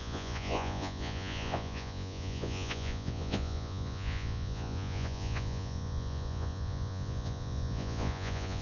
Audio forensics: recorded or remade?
remade